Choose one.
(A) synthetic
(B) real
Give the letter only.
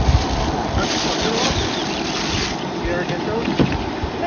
B